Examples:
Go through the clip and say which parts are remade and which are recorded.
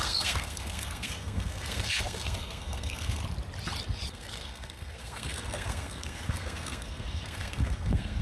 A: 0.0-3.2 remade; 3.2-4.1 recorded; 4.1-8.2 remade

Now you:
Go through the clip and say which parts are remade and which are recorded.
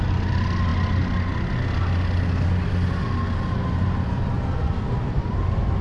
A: 0.0-5.8 recorded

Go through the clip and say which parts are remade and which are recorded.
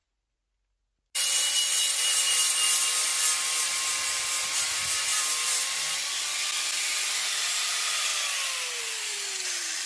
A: 0.0-1.8 recorded; 1.8-3.1 remade; 3.1-3.8 recorded; 3.8-8.1 remade; 8.1-8.8 recorded; 8.8-9.9 remade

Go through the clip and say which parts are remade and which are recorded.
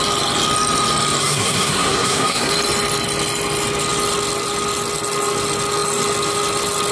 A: 0.0-1.2 recorded; 1.2-2.5 remade; 2.5-6.9 recorded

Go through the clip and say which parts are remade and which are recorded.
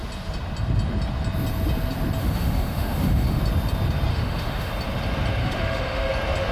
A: 0.0-2.2 recorded; 2.2-3.4 remade; 3.4-4.1 recorded; 4.1-4.7 remade; 4.7-5.4 recorded; 5.4-6.1 remade; 6.1-6.5 recorded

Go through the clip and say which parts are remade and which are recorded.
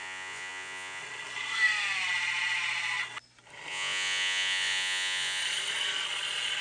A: 0.0-1.0 remade; 1.0-3.7 recorded; 3.7-5.4 remade; 5.4-6.6 recorded